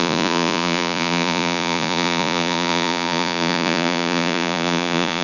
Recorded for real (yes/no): no